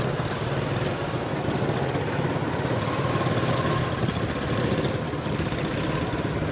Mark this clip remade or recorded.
recorded